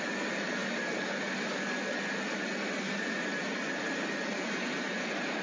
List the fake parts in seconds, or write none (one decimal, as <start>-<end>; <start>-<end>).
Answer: none